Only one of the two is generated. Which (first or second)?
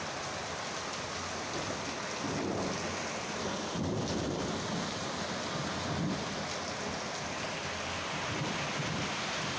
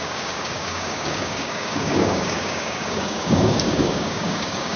second